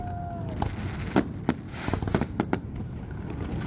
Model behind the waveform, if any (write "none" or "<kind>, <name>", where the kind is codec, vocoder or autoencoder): none